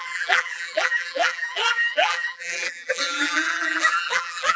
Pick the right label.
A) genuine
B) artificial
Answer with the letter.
B